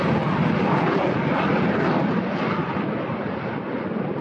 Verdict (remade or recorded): recorded